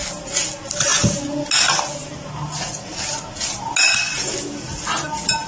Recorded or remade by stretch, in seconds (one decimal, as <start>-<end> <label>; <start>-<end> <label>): 0.0-5.5 recorded